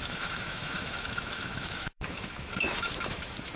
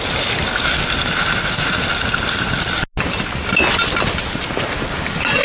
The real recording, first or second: second